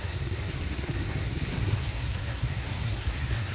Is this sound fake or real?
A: fake